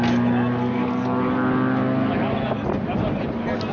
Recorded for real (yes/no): yes